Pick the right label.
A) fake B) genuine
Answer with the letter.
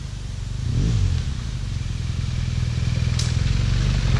B